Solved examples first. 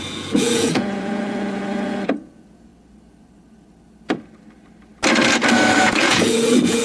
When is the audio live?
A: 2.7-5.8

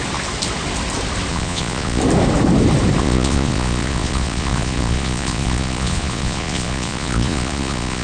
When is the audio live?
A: 0.0-1.3; 2.0-3.0